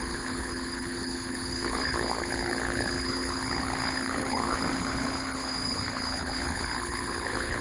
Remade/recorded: remade